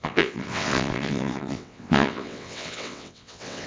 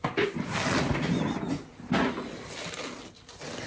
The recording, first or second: second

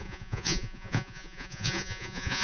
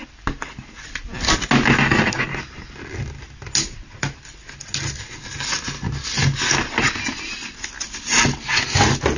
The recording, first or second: second